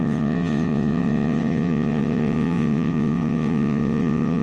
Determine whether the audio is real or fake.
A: fake